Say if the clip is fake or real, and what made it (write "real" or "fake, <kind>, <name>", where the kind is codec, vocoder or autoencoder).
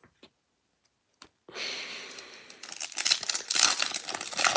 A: real